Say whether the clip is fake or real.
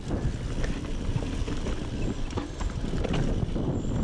real